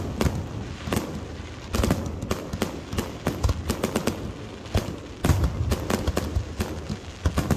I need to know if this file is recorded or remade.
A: recorded